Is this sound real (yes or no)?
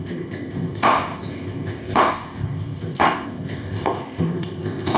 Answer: no